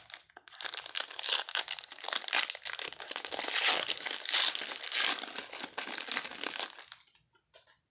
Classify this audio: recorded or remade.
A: recorded